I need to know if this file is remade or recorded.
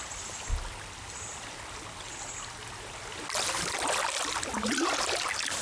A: recorded